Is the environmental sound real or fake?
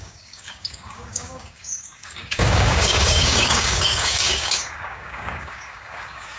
fake